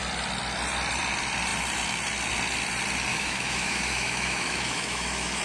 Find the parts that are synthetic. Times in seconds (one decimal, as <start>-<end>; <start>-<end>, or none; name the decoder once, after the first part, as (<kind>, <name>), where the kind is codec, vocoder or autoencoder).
3.1-5.4 (autoencoder, DAC-VAE)